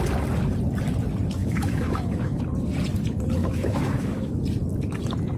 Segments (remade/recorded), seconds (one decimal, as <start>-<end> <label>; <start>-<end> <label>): 0.0-1.4 recorded; 1.4-2.4 remade; 2.4-3.4 recorded; 3.4-4.4 remade; 4.4-5.4 recorded